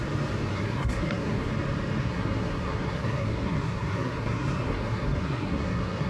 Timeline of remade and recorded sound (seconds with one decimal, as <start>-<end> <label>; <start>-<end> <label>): 0.0-0.5 recorded; 0.5-1.5 remade; 1.5-2.0 recorded; 2.0-6.1 remade